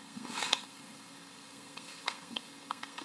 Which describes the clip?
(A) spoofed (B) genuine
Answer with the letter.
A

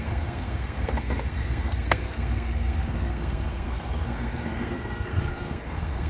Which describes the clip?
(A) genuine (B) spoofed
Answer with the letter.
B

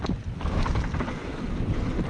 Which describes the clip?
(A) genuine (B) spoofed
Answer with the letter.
A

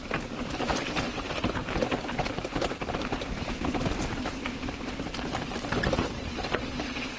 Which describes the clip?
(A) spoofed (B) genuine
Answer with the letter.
A